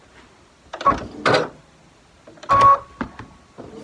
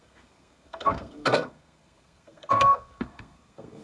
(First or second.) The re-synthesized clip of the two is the second